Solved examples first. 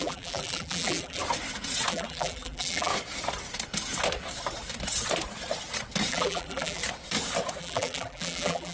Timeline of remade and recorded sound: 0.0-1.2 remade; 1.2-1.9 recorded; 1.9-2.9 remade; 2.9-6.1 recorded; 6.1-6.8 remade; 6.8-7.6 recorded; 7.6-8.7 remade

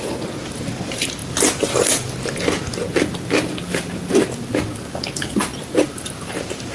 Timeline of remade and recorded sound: 0.0-6.7 recorded

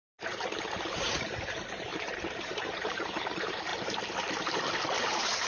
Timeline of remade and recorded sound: 0.0-3.7 remade; 3.7-5.0 recorded; 5.0-5.5 remade

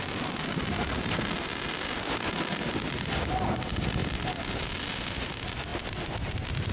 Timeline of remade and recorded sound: 0.0-6.7 recorded

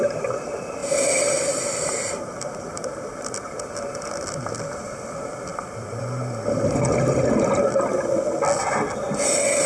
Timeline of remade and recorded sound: 0.0-5.5 recorded; 5.5-6.0 remade; 6.0-9.7 recorded

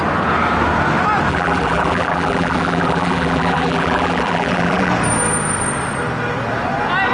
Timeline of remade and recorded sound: 0.0-1.3 recorded; 1.3-4.9 remade; 4.9-7.1 recorded

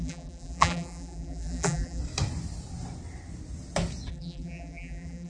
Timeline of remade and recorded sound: 0.0-2.0 remade; 2.0-4.1 recorded; 4.1-5.3 remade